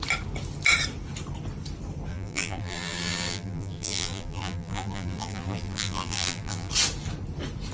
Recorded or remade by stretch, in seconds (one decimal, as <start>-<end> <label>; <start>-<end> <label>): 0.0-2.1 recorded; 2.1-6.7 remade; 6.7-7.7 recorded